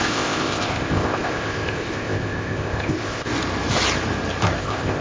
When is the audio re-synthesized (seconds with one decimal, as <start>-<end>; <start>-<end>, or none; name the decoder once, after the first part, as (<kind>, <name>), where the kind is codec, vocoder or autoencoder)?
0.0-3.3 (codec, ZipCodec); 4.6-5.0